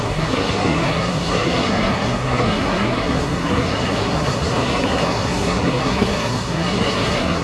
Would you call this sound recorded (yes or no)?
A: no